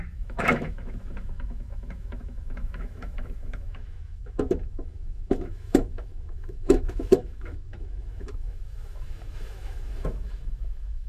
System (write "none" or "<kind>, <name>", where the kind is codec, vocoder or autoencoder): autoencoder, DAC-VAE